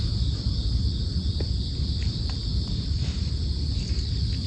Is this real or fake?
real